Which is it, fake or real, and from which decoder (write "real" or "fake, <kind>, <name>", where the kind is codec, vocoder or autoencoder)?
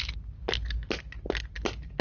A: real